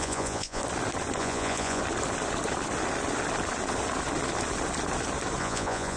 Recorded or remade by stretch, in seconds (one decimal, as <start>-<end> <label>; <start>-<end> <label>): 0.0-0.6 remade; 0.6-1.2 recorded; 1.2-1.8 remade; 1.8-5.4 recorded; 5.4-6.0 remade